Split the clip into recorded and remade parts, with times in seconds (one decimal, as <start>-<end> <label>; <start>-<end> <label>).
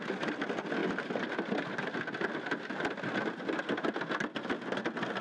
0.0-5.2 recorded